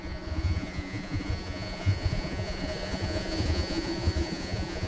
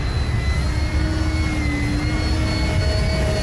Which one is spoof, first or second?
first